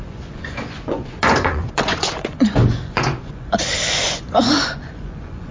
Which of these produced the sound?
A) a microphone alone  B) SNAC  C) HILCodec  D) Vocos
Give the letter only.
D